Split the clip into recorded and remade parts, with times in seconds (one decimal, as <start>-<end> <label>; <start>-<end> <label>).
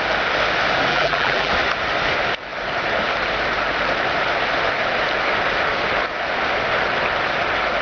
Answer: 0.0-0.9 recorded; 0.9-1.5 remade; 1.5-7.8 recorded